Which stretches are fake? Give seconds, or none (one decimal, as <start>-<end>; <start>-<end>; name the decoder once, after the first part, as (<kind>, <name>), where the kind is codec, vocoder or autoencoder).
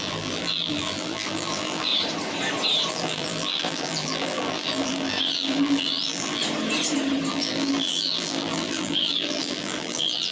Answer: 0.0-1.9 (vocoder, BigVGAN v2); 2.9-6.4; 7.3-10.3